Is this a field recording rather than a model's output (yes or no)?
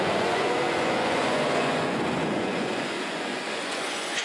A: no